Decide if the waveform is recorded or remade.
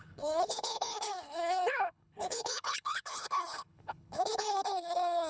remade